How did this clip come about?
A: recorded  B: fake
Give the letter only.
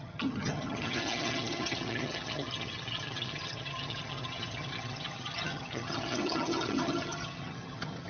B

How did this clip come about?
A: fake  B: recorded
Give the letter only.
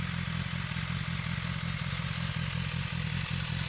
B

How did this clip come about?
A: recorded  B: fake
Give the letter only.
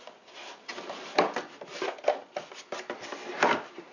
A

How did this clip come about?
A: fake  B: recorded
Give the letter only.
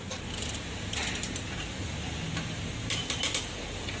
B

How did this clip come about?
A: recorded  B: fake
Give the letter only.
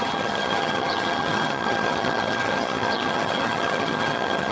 B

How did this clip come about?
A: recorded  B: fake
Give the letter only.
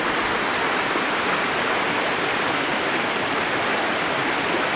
A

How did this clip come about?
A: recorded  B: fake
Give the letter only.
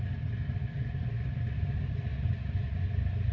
A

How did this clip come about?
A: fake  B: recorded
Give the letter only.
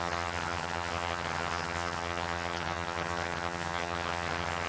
A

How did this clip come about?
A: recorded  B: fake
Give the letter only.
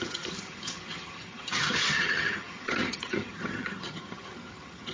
B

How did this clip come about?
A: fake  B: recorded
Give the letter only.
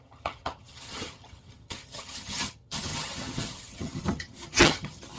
A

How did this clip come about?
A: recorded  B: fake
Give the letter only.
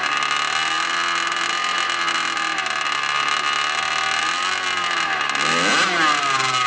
A